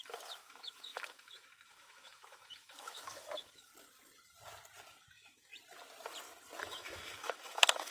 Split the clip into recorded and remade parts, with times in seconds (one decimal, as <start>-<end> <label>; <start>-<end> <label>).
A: 0.0-3.7 remade; 3.7-5.0 recorded; 5.0-5.5 remade; 5.5-6.6 recorded; 6.6-7.9 remade